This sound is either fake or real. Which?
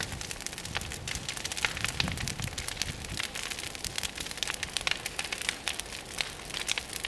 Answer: real